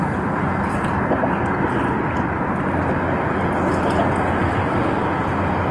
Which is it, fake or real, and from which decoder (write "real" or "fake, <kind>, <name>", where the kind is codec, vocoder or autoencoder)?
real